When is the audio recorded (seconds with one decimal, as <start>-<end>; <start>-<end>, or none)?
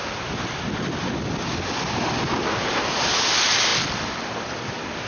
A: 0.0-5.1